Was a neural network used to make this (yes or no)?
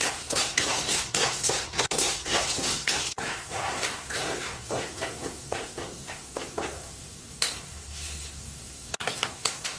yes